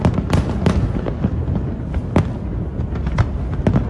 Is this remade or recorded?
recorded